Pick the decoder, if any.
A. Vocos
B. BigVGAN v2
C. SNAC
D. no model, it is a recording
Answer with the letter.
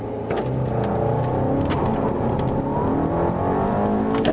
D